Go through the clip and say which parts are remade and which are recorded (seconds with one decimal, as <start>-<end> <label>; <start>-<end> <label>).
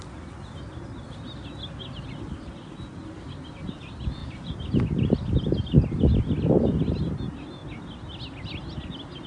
0.0-9.3 recorded